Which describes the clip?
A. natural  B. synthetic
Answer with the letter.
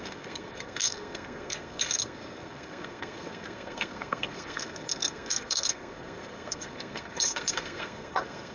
B